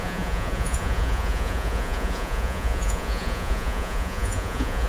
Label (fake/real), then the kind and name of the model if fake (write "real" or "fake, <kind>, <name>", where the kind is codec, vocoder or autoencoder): fake, vocoder, Vocos